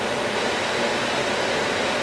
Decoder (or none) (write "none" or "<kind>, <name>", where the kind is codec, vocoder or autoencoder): none